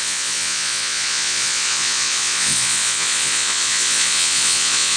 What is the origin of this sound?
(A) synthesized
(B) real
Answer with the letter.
A